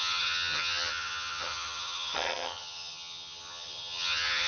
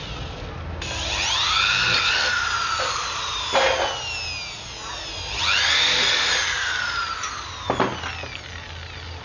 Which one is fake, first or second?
first